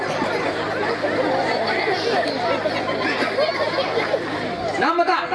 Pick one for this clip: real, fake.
real